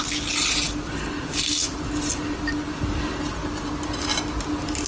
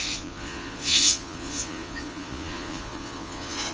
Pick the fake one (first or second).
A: second